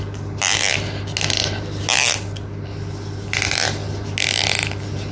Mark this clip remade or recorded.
recorded